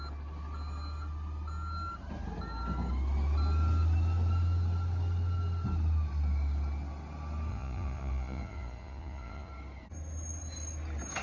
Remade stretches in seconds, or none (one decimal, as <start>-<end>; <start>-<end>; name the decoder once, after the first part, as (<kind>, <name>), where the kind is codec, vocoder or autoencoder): 7.5-9.5 (vocoder, Vocos)